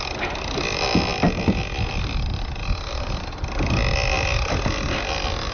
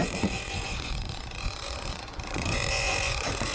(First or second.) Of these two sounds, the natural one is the first